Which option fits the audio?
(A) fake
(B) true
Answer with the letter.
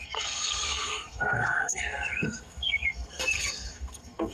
A